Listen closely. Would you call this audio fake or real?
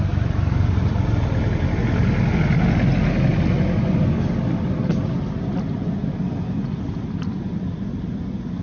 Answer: real